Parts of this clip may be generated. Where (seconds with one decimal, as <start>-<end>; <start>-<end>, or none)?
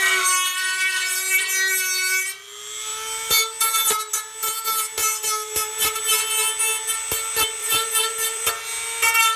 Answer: 5.0-6.0; 7.6-8.5